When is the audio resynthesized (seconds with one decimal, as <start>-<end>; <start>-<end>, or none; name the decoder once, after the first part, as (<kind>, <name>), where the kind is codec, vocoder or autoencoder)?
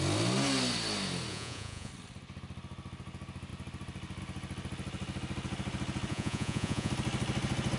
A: 1.3-1.9 (vocoder, Vocos); 6.1-6.9